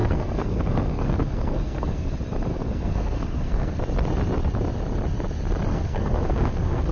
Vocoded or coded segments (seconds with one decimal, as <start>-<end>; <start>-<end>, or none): 0.0-2.1; 2.5-3.8; 5.7-6.9